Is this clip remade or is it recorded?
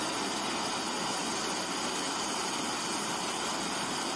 recorded